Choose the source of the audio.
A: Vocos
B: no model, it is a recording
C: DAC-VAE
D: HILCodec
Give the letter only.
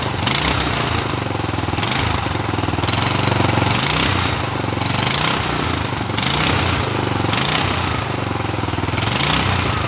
B